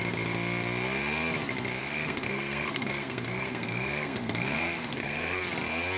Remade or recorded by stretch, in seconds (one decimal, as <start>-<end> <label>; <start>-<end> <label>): 0.0-1.8 recorded; 1.8-5.4 remade; 5.4-6.0 recorded